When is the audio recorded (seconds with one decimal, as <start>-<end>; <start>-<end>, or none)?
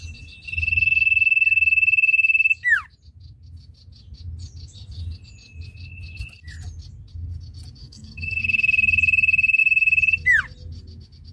0.0-7.8; 8.4-11.3